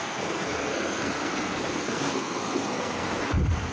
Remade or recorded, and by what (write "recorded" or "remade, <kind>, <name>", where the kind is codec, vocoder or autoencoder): remade, codec, SNAC